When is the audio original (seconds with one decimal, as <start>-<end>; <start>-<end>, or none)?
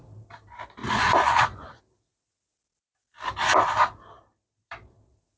0.0-0.8; 1.8-5.4